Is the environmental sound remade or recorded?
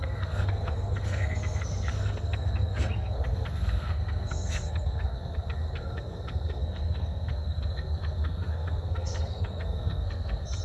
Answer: remade